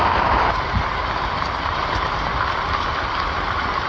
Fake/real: real